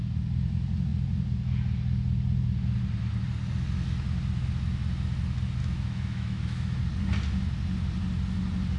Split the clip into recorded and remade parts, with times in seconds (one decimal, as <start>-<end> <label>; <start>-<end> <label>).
0.0-5.6 recorded; 5.6-6.8 remade; 6.8-8.8 recorded